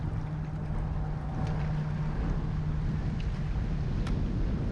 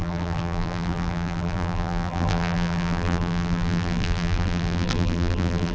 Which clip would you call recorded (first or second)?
first